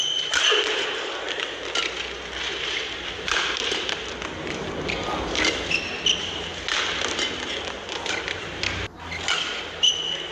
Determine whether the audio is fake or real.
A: real